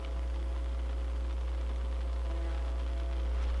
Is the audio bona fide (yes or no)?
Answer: yes